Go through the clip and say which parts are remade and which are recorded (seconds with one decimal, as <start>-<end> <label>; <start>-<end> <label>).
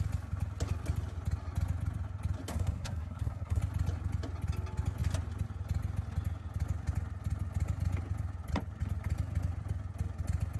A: 0.0-2.5 recorded; 2.5-3.6 remade; 3.6-10.6 recorded